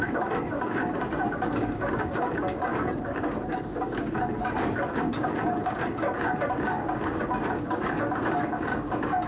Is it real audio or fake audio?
fake